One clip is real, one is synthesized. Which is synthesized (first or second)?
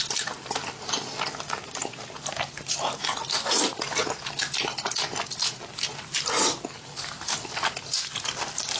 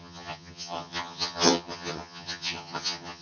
second